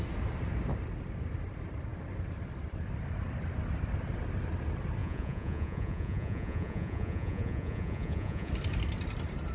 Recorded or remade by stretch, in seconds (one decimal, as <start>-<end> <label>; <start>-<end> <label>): 0.0-5.0 recorded; 5.0-8.5 remade; 8.5-9.5 recorded